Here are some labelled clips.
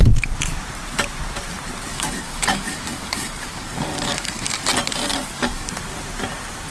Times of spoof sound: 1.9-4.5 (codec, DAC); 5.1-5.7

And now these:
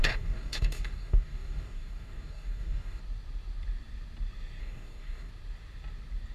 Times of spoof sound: 0.0-3.0 (codec, DAC); 4.6-5.3

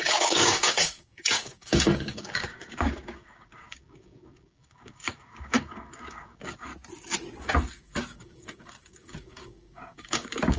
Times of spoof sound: 0.0-6.7 (codec, DAC); 7.4-10.6

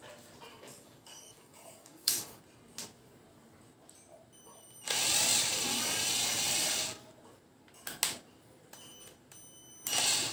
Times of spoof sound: 0.5-2.4 (codec, DAC)

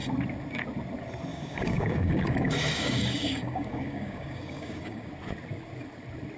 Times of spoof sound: 1.3-5.1 (codec, DAC)

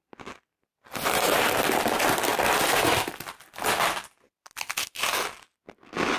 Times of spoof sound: none

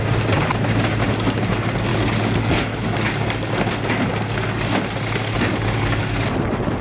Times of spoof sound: 1.9-3.6 (codec, DAC); 5.2-6.0